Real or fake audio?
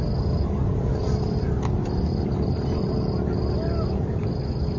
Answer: real